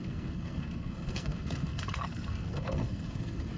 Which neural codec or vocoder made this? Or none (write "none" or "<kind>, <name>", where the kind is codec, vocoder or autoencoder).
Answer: codec, SNAC